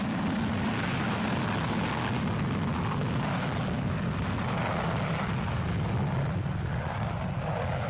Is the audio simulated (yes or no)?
no